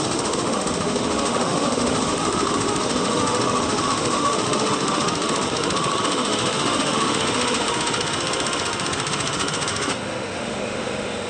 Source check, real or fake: fake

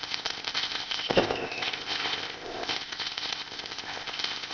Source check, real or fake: fake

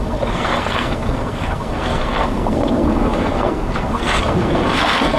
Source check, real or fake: fake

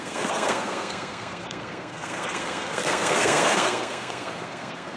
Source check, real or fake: fake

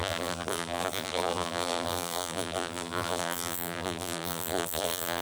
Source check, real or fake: fake